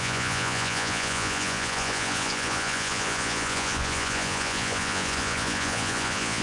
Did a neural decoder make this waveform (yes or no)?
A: yes